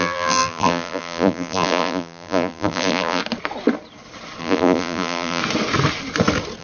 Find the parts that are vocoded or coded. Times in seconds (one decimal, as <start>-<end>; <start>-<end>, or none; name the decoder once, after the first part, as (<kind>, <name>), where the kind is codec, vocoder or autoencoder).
0.0-3.2 (vocoder, BigVGAN v2); 4.4-5.4